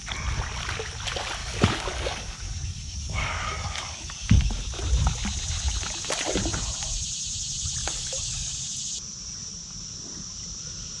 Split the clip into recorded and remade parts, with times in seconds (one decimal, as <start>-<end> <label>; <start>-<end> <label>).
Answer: 0.0-1.4 recorded; 1.4-4.6 remade; 4.6-7.8 recorded; 7.8-8.5 remade; 8.5-11.0 recorded